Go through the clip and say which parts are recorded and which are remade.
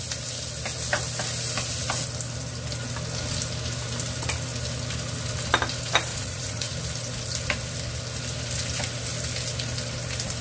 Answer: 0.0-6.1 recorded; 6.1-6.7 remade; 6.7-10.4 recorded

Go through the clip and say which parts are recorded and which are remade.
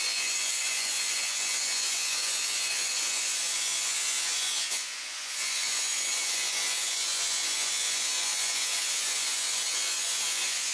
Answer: 0.0-10.7 remade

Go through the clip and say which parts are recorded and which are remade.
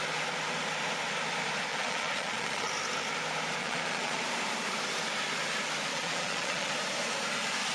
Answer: 0.0-1.7 recorded; 1.7-2.7 remade; 2.7-3.6 recorded; 3.6-4.2 remade; 4.2-5.9 recorded; 5.9-6.7 remade; 6.7-7.7 recorded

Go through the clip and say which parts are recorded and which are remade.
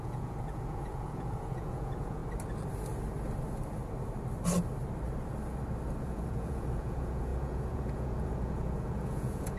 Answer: 0.0-2.2 remade; 2.2-6.0 recorded; 6.0-9.6 remade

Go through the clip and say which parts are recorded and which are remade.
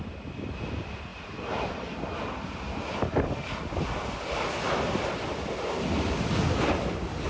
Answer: 0.0-7.3 recorded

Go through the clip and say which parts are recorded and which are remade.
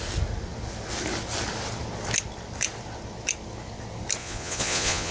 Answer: 0.0-4.2 recorded; 4.2-5.1 remade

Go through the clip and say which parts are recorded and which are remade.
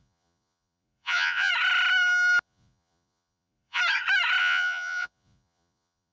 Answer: 0.0-1.5 remade; 1.5-2.4 recorded; 2.4-3.8 remade; 3.8-4.4 recorded; 4.4-6.1 remade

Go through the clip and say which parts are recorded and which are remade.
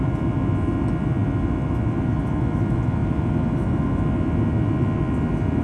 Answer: 0.0-5.6 recorded